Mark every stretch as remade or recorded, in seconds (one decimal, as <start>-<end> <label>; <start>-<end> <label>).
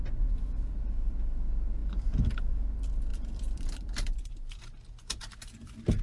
0.0-1.8 recorded; 1.8-2.5 remade; 2.5-3.1 recorded; 3.1-5.2 remade; 5.2-6.0 recorded